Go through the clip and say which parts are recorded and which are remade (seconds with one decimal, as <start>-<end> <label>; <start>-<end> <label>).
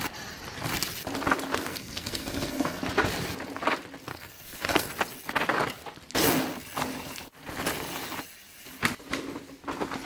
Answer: 0.0-1.5 recorded; 1.5-2.8 remade; 2.8-4.1 recorded; 4.1-4.9 remade; 4.9-10.1 recorded